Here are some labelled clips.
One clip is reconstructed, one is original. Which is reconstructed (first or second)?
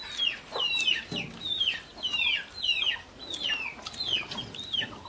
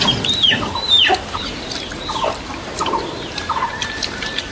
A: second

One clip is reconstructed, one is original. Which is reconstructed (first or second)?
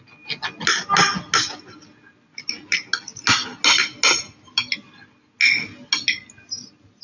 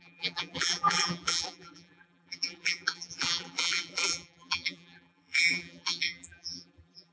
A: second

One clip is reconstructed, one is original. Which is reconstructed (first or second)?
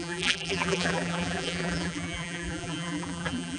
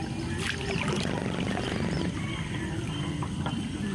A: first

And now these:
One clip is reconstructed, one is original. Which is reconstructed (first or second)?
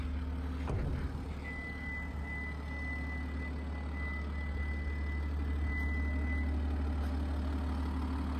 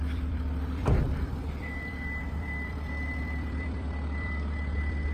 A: second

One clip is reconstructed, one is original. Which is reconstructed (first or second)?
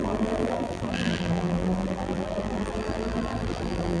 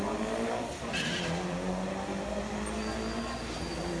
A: first